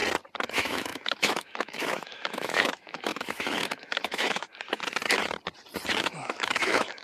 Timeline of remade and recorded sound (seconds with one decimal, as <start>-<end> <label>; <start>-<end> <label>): 0.0-0.5 recorded; 0.5-4.5 remade; 4.5-6.0 recorded; 6.0-7.0 remade